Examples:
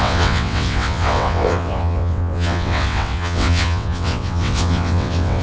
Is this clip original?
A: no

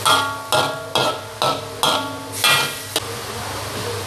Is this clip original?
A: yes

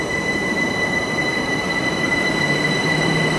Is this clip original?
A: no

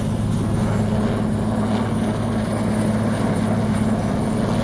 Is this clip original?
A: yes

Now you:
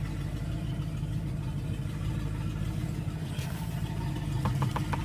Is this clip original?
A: yes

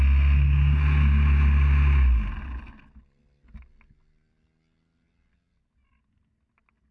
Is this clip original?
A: yes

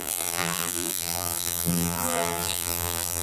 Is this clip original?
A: no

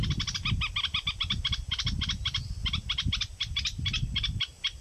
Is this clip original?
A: yes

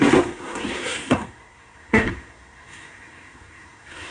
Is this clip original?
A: no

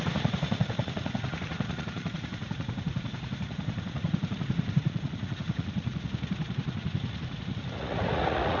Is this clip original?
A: no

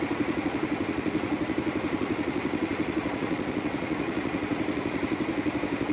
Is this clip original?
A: no